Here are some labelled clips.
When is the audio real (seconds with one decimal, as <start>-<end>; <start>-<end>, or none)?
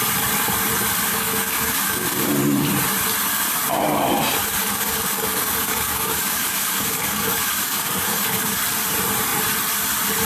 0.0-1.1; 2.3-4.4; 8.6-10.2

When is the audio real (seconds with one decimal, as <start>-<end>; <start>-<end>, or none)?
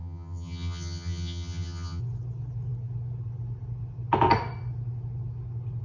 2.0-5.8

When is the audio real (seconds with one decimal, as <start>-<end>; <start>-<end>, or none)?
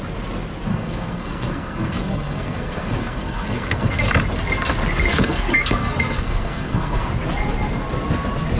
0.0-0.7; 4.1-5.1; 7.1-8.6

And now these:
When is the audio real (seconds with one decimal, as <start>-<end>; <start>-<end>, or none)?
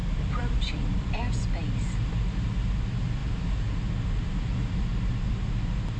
1.2-6.0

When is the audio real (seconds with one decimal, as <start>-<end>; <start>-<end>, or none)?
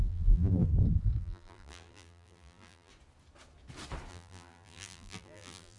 0.7-1.2; 2.9-4.1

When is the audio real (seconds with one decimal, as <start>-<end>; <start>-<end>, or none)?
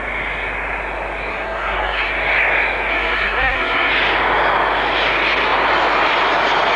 0.0-1.3; 2.1-2.9; 3.9-6.8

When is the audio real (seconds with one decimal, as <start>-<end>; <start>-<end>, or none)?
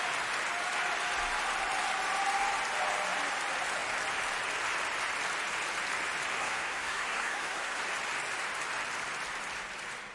0.0-6.4; 7.8-10.1